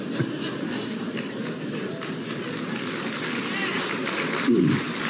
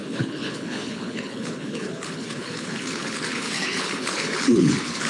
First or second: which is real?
first